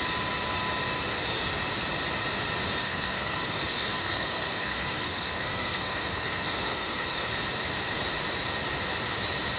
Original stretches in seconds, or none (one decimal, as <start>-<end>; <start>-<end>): 0.0-2.8; 7.3-9.6

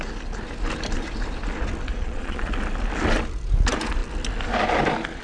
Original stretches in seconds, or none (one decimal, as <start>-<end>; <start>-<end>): 0.0-1.9; 2.5-5.2

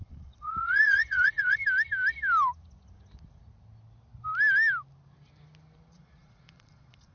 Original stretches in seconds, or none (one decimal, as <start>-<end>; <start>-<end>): 1.6-5.9

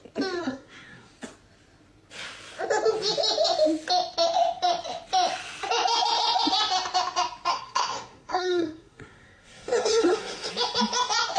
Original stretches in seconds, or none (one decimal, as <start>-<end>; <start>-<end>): 0.0-0.4; 1.1-7.5; 10.5-11.4